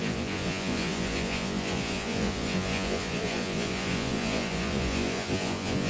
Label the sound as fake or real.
fake